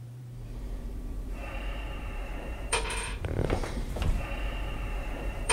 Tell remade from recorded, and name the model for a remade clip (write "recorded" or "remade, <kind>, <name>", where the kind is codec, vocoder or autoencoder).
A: remade, vocoder, BigVGAN v2